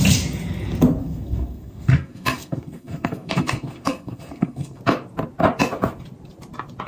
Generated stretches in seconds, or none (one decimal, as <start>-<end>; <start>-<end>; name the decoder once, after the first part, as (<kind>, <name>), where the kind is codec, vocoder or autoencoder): 1.0-4.8 (codec, SNAC)